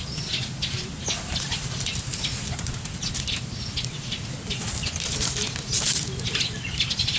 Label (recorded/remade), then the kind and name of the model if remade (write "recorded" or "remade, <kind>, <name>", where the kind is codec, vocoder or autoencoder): recorded